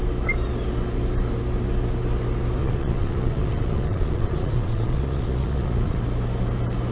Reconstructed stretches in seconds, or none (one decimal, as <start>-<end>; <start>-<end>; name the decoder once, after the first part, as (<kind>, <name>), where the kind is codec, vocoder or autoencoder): 2.6-6.0 (vocoder, Vocos)